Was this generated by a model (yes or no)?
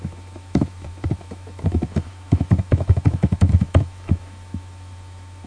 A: yes